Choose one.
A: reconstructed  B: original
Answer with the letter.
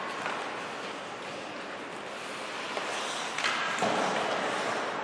B